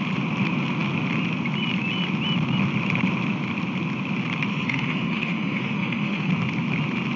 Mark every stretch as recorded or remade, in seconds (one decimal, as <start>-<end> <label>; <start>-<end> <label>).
0.0-4.5 recorded; 4.5-6.3 remade; 6.3-7.2 recorded